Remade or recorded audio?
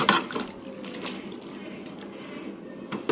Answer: recorded